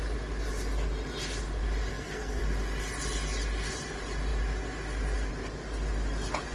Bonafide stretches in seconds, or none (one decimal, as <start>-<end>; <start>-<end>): 0.0-1.9; 2.4-6.5